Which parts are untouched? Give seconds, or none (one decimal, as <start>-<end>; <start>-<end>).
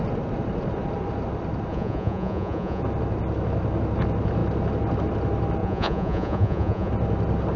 0.0-1.7; 2.8-5.6; 6.9-7.6